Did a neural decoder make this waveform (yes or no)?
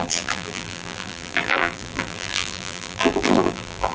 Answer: yes